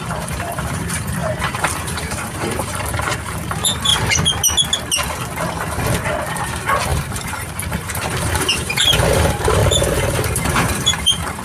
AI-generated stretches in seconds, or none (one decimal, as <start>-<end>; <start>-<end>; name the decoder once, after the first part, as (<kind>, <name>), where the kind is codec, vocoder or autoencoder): 0.0-3.9 (vocoder, BigVGAN v2); 6.3-11.4